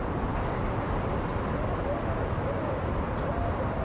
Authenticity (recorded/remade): recorded